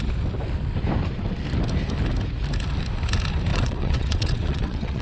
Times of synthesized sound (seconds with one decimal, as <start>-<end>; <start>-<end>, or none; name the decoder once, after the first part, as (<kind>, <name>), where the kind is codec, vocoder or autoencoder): 3.5-5.0 (vocoder, WaveNeXt)